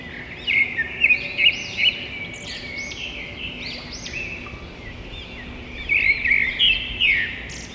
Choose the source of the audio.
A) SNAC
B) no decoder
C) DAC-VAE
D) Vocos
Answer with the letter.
B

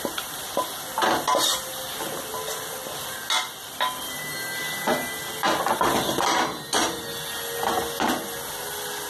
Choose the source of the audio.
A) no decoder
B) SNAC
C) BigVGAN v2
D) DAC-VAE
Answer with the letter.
A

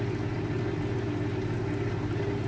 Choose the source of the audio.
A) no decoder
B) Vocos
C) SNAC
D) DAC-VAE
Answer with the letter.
A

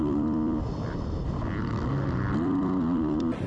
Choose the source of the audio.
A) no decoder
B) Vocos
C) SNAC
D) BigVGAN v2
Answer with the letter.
D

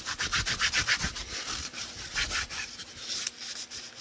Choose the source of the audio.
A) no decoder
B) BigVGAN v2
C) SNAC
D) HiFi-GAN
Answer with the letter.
A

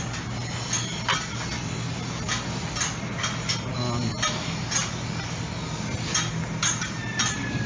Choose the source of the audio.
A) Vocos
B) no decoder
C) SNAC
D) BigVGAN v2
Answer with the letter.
B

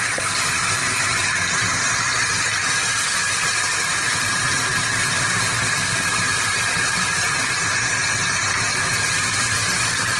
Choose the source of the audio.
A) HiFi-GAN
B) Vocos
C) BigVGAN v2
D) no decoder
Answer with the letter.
D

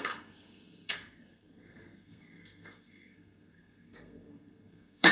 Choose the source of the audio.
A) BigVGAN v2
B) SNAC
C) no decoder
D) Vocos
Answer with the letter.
B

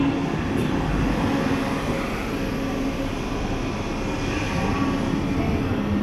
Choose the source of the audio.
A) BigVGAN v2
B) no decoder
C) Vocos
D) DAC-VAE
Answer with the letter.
B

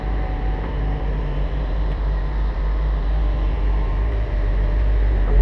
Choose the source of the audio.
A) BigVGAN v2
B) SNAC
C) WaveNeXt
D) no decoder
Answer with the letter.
A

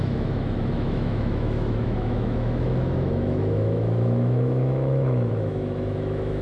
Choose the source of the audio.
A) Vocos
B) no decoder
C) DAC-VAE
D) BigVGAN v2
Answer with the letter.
C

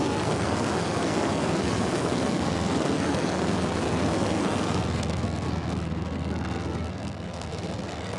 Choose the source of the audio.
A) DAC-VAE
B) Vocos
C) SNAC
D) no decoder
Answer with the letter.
C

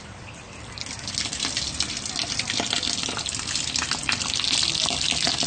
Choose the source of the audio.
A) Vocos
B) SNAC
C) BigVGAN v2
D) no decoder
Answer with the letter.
D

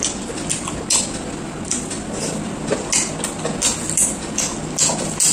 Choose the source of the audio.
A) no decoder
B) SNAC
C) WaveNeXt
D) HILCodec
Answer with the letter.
A